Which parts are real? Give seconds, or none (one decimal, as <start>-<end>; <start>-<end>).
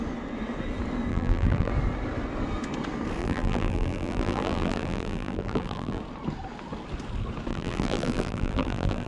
0.0-1.1; 1.7-3.2; 6.0-7.5